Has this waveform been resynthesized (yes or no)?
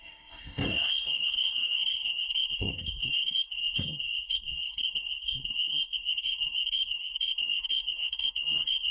yes